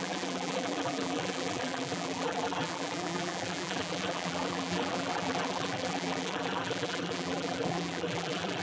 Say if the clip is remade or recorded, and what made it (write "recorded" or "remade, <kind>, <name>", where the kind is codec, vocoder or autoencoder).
remade, vocoder, BigVGAN v2